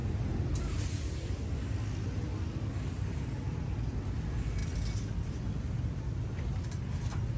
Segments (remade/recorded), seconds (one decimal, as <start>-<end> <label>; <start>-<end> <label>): 0.0-0.6 remade; 0.6-7.4 recorded